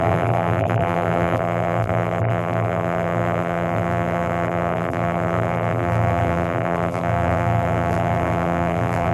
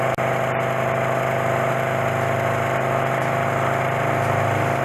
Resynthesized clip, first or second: first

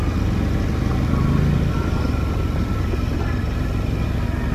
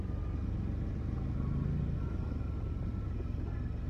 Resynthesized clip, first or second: first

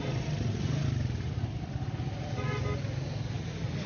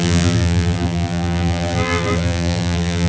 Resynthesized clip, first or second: second